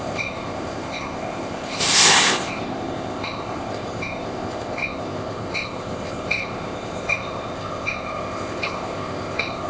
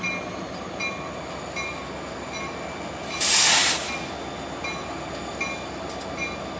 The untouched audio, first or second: second